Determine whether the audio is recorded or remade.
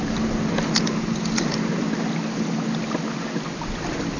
recorded